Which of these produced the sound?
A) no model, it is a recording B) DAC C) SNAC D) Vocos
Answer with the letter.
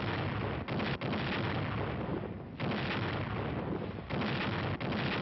A